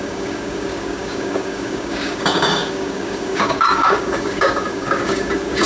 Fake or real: fake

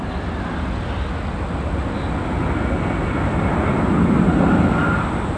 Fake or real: real